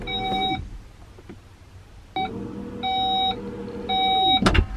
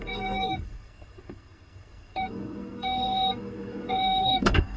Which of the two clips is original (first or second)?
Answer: first